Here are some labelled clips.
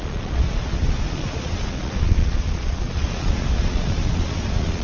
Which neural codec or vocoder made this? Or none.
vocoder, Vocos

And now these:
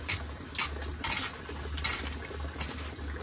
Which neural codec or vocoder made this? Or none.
none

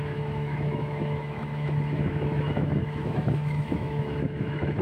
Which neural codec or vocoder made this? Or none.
autoencoder, DAC-VAE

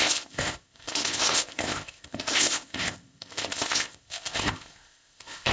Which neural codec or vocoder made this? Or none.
codec, ZipCodec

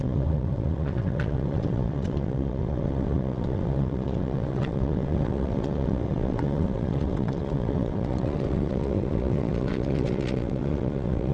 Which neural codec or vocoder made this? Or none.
vocoder, WaveNeXt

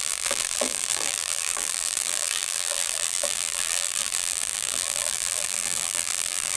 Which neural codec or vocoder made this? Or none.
vocoder, BigVGAN v2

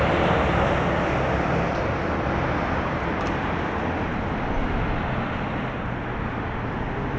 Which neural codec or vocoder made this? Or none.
none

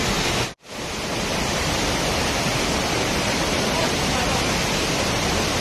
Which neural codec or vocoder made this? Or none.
none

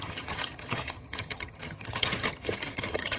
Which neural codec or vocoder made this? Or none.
vocoder, HiFi-GAN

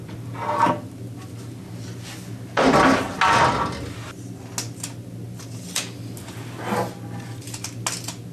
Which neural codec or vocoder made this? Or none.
none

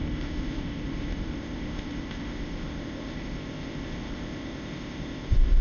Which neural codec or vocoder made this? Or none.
codec, ZipCodec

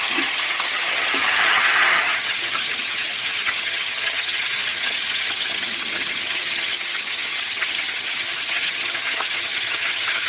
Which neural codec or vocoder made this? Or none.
vocoder, HiFi-GAN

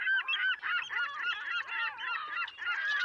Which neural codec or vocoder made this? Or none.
none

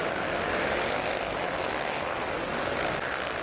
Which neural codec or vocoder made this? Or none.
none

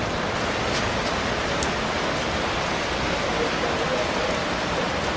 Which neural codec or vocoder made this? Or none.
none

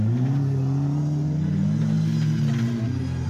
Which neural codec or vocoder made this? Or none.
none